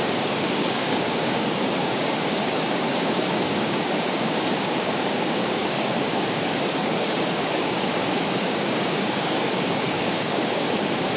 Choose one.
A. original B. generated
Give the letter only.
B